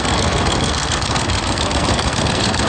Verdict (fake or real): fake